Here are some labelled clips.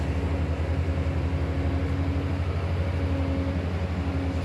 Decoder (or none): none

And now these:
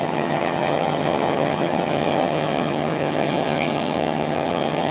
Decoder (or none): vocoder, HiFi-GAN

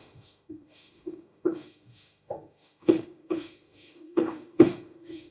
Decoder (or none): autoencoder, DAC-VAE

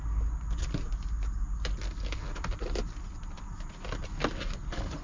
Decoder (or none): none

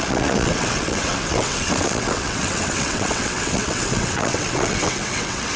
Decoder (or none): vocoder, WaveNeXt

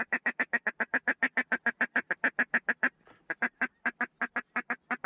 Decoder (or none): none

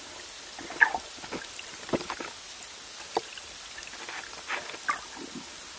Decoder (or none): none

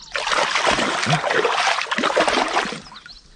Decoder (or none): none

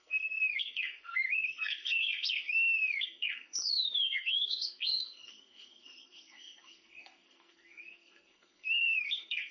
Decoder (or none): codec, SNAC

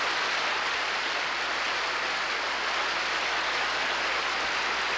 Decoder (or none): none